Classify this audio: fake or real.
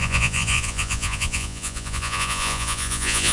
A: fake